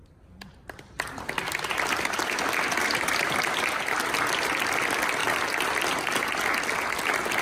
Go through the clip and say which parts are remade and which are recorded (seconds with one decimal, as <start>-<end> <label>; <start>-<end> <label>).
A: 0.0-1.4 remade; 1.4-2.8 recorded; 2.8-4.1 remade; 4.1-5.2 recorded; 5.2-5.8 remade; 5.8-7.4 recorded